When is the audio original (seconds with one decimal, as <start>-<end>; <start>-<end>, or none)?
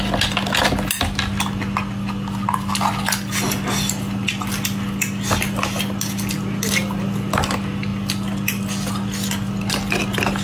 0.0-10.4